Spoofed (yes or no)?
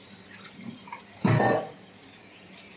yes